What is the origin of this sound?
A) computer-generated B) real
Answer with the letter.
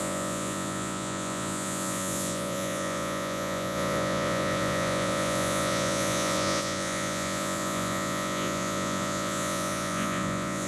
A